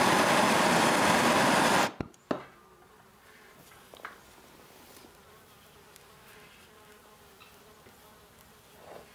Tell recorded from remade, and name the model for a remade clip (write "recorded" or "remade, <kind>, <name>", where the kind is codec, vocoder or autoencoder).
recorded